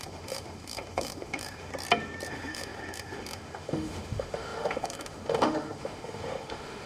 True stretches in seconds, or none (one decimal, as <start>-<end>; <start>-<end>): 1.7-2.3